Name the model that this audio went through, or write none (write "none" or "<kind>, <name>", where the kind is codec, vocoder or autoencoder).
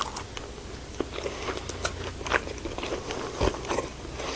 none